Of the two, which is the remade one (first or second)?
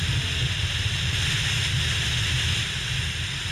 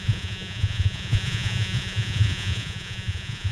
second